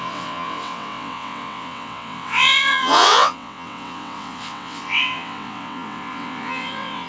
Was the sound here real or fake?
fake